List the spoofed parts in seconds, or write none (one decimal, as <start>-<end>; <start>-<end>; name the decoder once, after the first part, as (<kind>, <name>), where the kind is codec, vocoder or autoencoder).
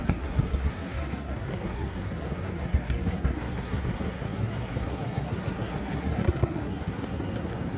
0.0-7.8 (codec, SNAC)